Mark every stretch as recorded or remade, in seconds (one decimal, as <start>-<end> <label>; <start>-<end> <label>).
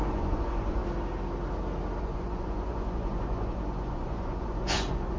0.0-0.8 remade; 0.8-2.0 recorded; 2.0-5.2 remade